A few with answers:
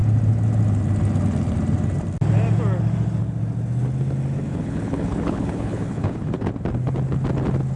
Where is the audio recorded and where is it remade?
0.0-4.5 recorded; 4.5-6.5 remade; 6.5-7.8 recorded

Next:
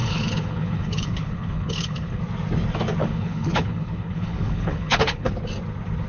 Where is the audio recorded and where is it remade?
0.0-2.2 remade; 2.2-3.0 recorded; 3.0-5.3 remade; 5.3-6.1 recorded

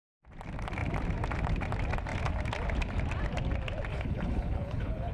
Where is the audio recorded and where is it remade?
0.0-3.9 recorded; 3.9-5.1 remade

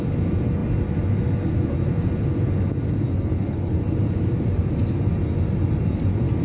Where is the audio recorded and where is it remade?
0.0-3.3 recorded; 3.3-3.8 remade; 3.8-6.4 recorded

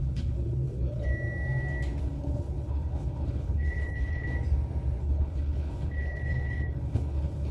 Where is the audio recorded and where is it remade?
0.0-1.1 remade; 1.1-2.0 recorded; 2.0-4.3 remade; 4.3-5.0 recorded; 5.0-7.5 remade

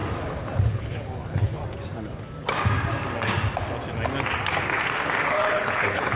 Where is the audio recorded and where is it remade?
0.0-0.6 recorded; 0.6-1.6 remade; 1.6-5.3 recorded; 5.3-6.2 remade

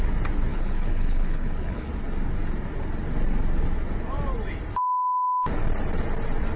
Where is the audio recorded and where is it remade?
0.0-0.5 recorded; 0.5-1.9 remade; 1.9-6.6 recorded